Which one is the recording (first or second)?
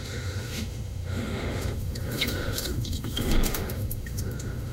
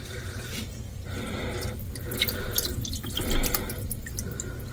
second